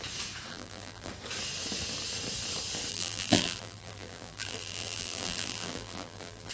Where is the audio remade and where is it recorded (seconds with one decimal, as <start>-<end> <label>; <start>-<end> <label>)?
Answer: 0.0-0.5 recorded; 0.5-1.1 remade; 1.1-2.9 recorded; 2.9-6.5 remade